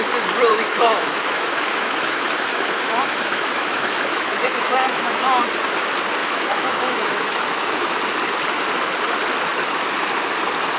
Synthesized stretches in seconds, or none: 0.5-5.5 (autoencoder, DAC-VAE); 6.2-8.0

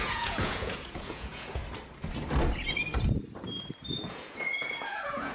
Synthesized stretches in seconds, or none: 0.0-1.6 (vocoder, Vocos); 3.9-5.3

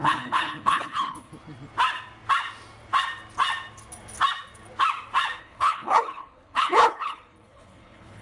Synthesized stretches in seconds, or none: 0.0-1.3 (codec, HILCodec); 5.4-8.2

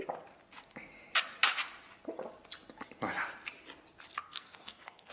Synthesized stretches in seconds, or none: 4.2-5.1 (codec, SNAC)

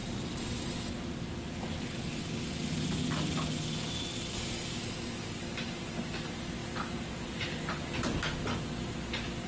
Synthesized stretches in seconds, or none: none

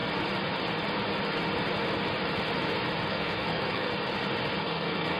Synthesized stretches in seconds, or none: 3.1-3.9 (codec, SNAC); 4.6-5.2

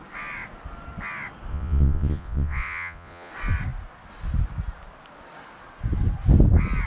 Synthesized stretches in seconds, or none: 1.5-3.3 (vocoder, Vocos)

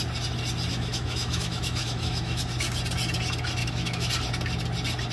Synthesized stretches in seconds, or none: 0.7-2.4 (autoencoder, DAC-VAE); 3.6-4.1